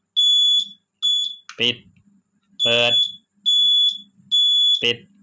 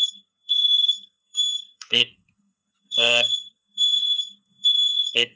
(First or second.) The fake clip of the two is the second